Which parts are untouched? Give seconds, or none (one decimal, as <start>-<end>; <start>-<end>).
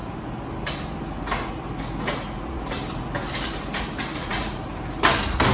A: 0.0-4.1; 4.6-5.5